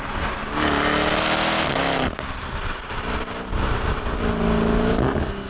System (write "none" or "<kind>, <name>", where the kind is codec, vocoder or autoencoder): none